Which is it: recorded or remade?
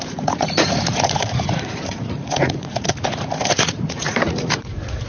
remade